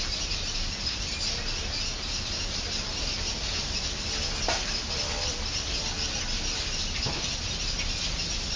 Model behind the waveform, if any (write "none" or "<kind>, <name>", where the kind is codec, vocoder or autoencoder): none